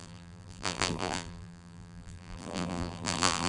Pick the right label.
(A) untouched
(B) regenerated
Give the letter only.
B